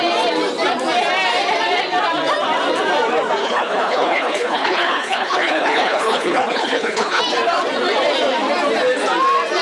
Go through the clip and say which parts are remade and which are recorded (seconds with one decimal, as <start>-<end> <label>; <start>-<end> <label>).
0.0-3.4 recorded; 3.4-7.2 remade; 7.2-9.6 recorded